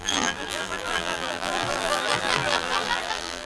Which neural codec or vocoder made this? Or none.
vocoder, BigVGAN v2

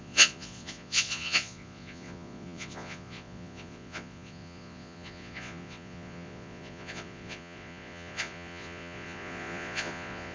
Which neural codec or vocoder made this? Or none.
vocoder, Vocos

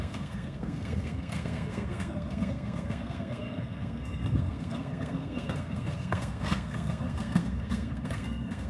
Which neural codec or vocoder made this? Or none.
codec, SNAC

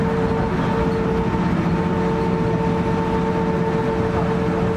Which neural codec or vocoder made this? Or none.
none